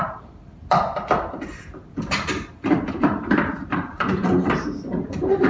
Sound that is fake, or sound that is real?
fake